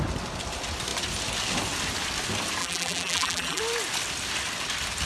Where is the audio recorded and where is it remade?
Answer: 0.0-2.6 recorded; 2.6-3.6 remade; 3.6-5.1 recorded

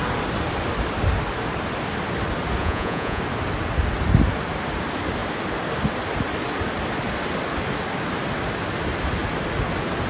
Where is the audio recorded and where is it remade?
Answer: 0.0-2.6 recorded; 2.6-3.2 remade; 3.2-10.1 recorded

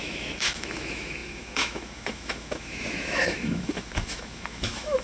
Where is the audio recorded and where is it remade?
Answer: 0.0-5.0 remade

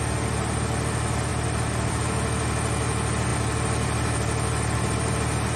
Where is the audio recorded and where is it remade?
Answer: 0.0-1.3 recorded; 1.3-2.0 remade; 2.0-5.6 recorded

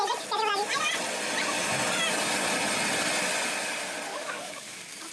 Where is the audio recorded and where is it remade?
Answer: 0.0-4.1 recorded; 4.1-5.1 remade

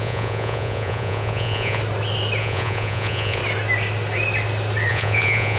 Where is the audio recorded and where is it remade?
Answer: 0.0-1.8 remade; 1.8-2.4 recorded; 2.4-3.4 remade; 3.4-4.9 recorded; 4.9-5.6 remade

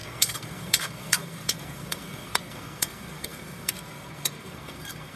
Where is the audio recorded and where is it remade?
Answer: 0.0-5.2 remade